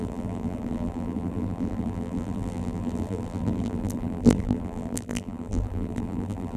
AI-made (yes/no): yes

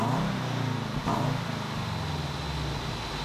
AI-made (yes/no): no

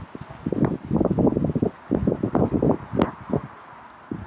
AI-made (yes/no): no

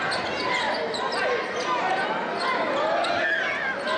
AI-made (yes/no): no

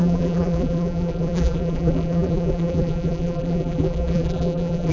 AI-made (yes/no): yes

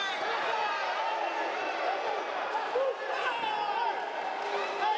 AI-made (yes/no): no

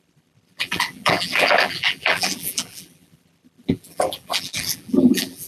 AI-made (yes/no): yes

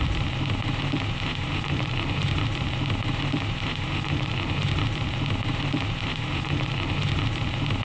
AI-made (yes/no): yes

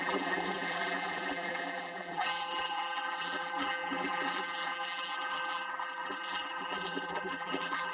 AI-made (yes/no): yes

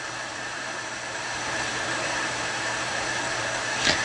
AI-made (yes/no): yes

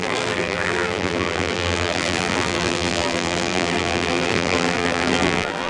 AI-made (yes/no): yes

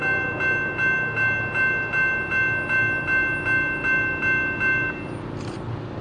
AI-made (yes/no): no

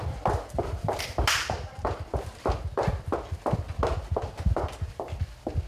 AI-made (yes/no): no